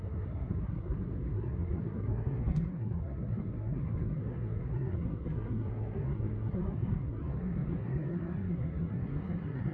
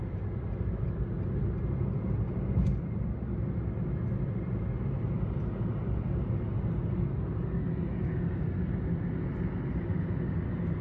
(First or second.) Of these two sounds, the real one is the second